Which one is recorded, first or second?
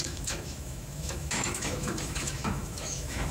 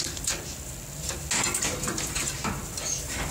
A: second